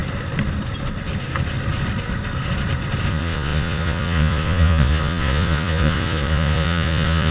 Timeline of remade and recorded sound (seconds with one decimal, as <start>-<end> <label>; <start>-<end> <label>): 0.0-3.1 recorded; 3.1-7.3 remade